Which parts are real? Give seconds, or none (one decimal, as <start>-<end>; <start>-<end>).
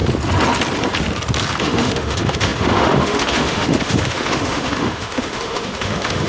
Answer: 0.0-1.6